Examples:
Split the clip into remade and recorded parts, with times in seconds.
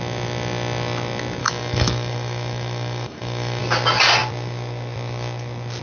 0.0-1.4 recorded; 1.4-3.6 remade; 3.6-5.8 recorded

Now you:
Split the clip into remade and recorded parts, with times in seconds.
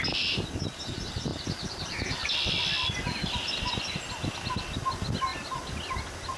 0.0-6.4 recorded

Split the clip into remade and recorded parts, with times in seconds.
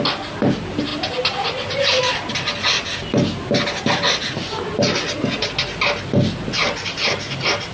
0.0-6.6 recorded; 6.6-7.1 remade; 7.1-7.7 recorded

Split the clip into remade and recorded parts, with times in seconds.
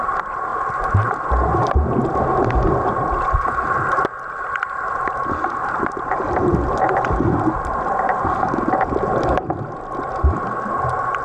0.0-11.2 recorded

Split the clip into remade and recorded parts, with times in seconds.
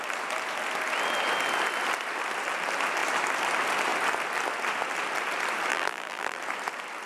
0.0-5.7 recorded; 5.7-6.4 remade; 6.4-7.0 recorded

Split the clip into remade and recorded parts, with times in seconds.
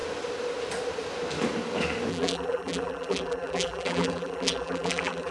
0.0-2.1 recorded; 2.1-5.3 remade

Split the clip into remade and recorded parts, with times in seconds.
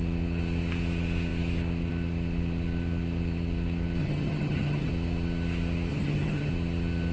0.0-4.0 recorded; 4.0-4.9 remade; 4.9-5.9 recorded; 5.9-6.5 remade; 6.5-7.1 recorded